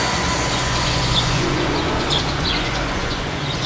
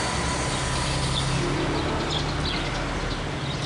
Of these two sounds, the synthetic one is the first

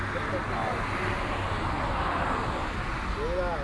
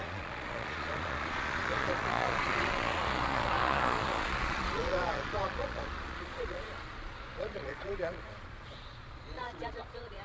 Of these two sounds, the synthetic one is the second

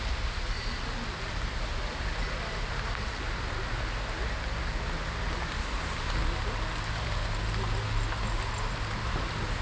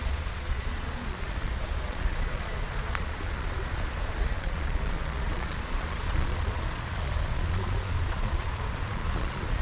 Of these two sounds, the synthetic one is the second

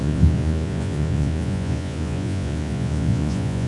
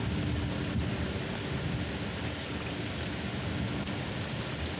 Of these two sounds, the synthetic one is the first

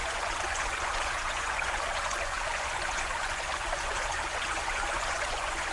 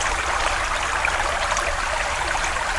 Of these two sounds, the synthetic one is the first